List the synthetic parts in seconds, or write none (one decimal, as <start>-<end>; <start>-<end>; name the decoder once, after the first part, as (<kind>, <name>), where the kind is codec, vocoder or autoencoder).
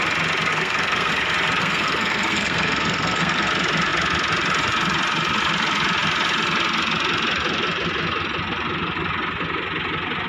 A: 0.5-1.1 (codec, SNAC); 1.6-3.5